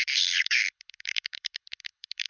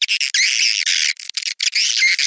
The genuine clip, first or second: second